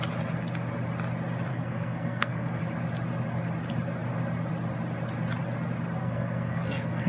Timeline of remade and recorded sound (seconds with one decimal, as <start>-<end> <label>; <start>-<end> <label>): 0.0-1.5 recorded; 1.5-2.6 remade; 2.6-6.0 recorded; 6.0-7.1 remade